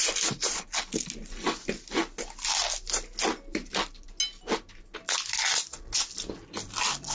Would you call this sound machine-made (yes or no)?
no